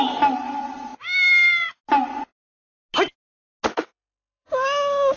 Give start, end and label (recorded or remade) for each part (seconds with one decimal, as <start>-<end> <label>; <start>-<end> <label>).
0.0-3.7 recorded; 3.7-5.2 remade